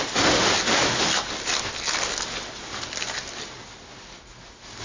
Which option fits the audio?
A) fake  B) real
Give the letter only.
B